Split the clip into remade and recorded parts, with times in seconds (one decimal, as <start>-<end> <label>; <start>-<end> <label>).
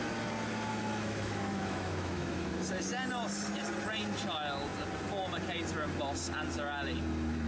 0.0-0.7 recorded; 0.7-2.5 remade; 2.5-7.5 recorded